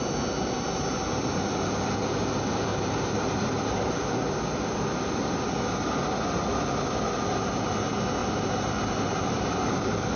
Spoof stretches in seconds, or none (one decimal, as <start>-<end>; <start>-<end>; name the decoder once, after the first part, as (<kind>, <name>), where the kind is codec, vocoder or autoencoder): 2.7-3.9 (vocoder, BigVGAN v2); 8.2-10.2